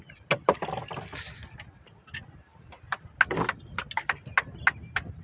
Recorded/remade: recorded